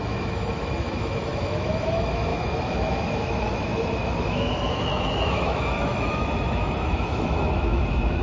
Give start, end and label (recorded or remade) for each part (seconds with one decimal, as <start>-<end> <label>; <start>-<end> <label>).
0.0-8.2 remade

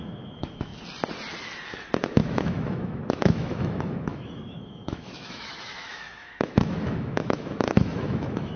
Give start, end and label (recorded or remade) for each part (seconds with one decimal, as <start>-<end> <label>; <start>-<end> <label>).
0.0-0.7 remade; 0.7-2.0 recorded; 2.0-8.6 remade

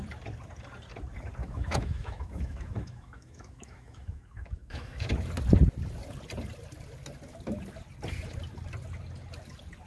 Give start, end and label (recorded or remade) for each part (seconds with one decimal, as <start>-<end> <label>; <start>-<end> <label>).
0.0-1.4 recorded; 1.4-5.1 remade; 5.1-9.9 recorded

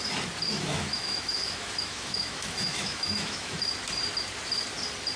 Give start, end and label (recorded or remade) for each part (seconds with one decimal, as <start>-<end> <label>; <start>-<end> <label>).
0.0-0.5 recorded; 0.5-3.6 remade; 3.6-5.2 recorded